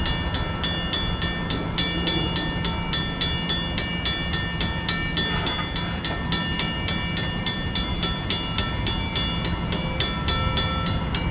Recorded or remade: recorded